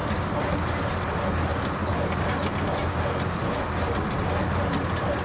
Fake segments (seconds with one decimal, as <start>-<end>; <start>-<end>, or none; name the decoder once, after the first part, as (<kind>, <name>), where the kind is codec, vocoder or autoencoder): none